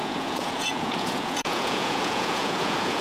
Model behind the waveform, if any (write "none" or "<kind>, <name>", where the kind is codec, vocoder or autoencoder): vocoder, Vocos